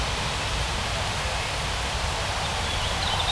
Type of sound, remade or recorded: recorded